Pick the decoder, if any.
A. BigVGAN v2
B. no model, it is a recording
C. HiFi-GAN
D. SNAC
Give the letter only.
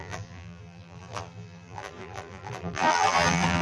A